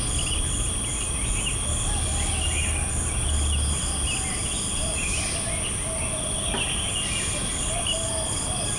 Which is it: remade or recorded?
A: recorded